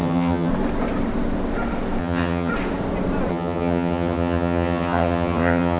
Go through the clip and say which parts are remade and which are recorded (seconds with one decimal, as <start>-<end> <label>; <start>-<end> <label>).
0.0-0.5 remade; 0.5-2.0 recorded; 2.0-2.5 remade; 2.5-3.3 recorded; 3.3-5.8 remade